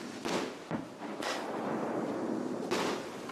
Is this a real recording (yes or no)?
yes